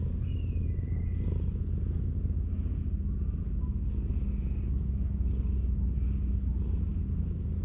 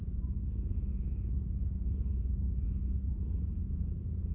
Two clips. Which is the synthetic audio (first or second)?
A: second